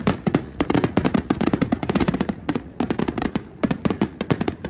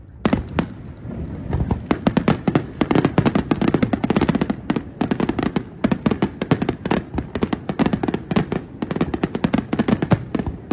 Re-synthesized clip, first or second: first